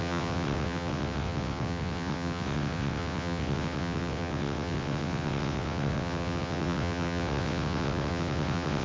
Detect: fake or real fake